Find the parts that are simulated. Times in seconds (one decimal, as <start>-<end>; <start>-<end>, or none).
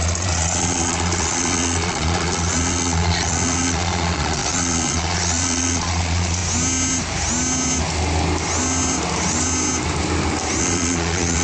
0.0-6.4; 10.6-11.4